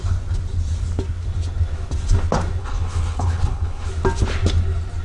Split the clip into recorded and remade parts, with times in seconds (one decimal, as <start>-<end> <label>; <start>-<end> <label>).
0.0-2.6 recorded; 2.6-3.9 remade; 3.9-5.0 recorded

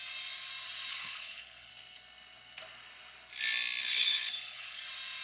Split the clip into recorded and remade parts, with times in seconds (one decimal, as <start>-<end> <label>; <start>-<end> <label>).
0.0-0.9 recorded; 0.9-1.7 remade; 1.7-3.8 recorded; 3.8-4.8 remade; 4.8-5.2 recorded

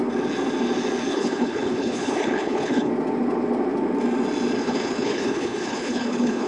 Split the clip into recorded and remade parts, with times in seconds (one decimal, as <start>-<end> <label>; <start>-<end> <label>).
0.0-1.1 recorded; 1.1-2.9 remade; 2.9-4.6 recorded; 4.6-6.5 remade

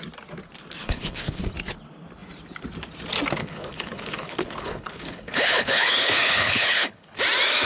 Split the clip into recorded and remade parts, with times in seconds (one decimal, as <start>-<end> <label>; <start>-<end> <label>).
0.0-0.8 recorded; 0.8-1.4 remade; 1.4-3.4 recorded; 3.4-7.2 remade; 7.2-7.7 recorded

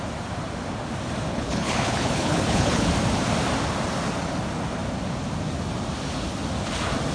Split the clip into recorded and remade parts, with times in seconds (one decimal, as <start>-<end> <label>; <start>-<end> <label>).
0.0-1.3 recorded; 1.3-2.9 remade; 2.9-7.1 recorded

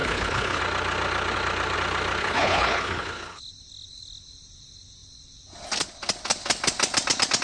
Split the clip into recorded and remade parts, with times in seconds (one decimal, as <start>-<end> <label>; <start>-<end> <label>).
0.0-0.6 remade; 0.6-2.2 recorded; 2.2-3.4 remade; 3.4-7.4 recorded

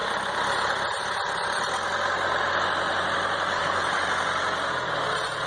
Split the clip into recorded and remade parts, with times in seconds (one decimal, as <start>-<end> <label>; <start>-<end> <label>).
0.0-3.5 recorded; 3.5-4.0 remade; 4.0-5.5 recorded